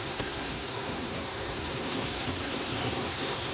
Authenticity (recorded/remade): remade